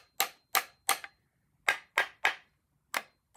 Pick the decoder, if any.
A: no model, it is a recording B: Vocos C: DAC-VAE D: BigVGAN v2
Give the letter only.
A